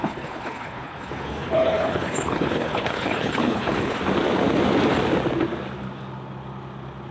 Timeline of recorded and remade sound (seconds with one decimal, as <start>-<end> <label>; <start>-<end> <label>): 0.0-4.0 remade; 4.0-7.1 recorded

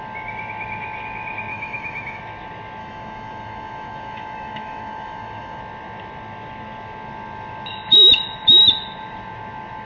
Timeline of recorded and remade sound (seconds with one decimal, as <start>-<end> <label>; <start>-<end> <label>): 0.0-1.5 recorded; 1.5-2.2 remade; 2.2-2.8 recorded; 2.8-5.6 remade; 5.6-9.9 recorded

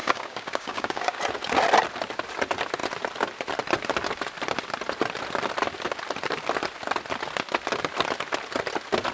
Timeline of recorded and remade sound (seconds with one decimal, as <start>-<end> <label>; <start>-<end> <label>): 0.0-1.2 remade; 1.2-9.1 recorded

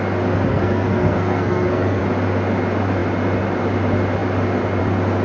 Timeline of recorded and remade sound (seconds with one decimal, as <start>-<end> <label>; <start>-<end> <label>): 0.0-0.5 recorded; 0.5-2.0 remade; 2.0-5.2 recorded

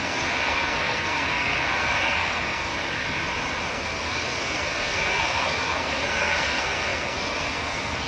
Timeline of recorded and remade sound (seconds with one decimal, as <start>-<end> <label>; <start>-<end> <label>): 0.0-2.7 remade; 2.7-3.7 recorded; 3.7-8.1 remade

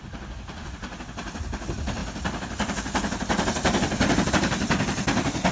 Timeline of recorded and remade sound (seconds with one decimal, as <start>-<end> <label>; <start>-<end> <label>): 0.0-5.5 recorded

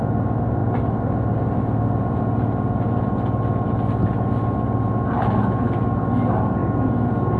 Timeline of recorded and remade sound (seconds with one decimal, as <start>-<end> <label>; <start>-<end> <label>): 0.0-7.4 recorded

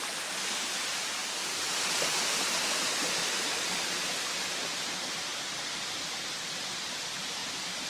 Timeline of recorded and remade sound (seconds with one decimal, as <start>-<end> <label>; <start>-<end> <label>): 0.0-1.2 remade; 1.2-3.5 recorded; 3.5-5.3 remade; 5.3-6.9 recorded; 6.9-7.4 remade; 7.4-7.9 recorded